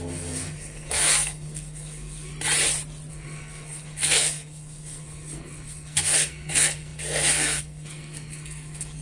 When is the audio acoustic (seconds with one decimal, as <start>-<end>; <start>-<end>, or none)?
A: 2.3-3.1